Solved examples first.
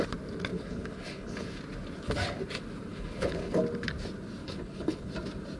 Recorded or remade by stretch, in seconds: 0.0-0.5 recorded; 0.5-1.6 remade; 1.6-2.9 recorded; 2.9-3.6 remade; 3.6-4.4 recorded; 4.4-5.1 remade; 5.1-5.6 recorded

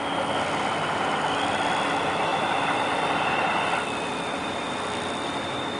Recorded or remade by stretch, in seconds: 0.0-5.8 recorded

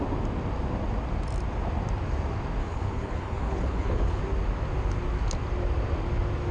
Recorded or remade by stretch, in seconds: 0.0-2.6 recorded; 2.6-4.2 remade; 4.2-6.5 recorded

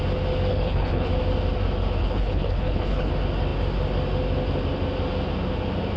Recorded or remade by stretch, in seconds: 0.0-0.5 recorded; 0.5-1.1 remade; 1.1-2.0 recorded; 2.0-3.1 remade; 3.1-6.0 recorded

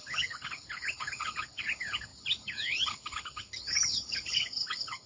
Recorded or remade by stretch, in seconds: 0.0-5.1 remade

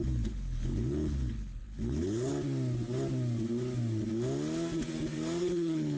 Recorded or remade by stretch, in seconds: 0.0-2.3 remade; 2.3-5.4 recorded; 5.4-6.0 remade

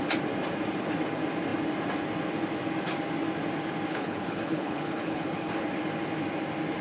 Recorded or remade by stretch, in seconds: 0.0-3.9 recorded; 3.9-5.5 remade; 5.5-6.8 recorded